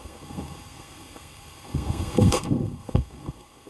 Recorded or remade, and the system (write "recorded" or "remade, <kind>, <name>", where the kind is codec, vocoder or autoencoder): remade, codec, SNAC